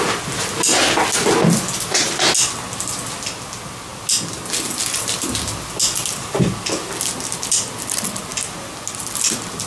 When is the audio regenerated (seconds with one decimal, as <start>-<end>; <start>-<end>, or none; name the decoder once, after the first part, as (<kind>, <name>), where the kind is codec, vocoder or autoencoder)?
none